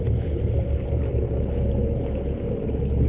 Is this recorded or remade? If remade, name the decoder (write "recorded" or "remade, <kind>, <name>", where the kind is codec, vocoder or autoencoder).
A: remade, vocoder, BigVGAN v2